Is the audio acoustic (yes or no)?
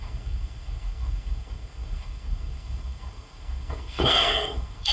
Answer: no